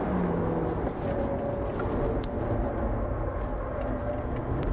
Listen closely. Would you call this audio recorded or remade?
recorded